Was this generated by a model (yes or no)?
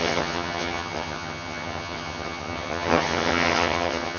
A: yes